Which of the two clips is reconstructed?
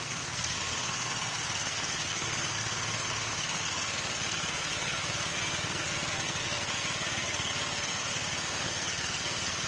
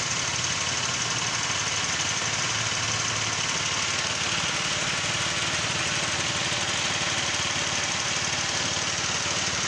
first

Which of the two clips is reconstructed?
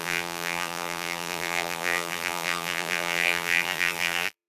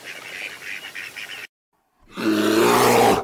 first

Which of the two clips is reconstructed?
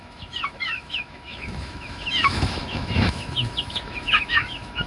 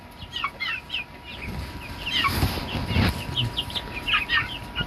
first